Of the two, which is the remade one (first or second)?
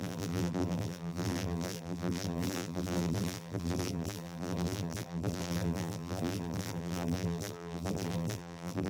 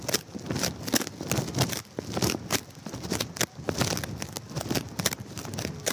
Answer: first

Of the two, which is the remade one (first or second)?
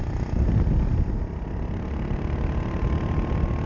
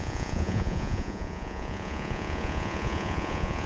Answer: second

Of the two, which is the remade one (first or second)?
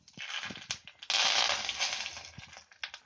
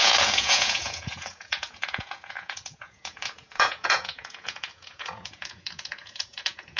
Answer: second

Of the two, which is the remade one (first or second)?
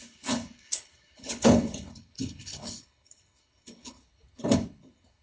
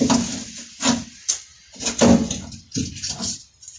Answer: first